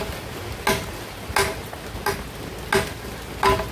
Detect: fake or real real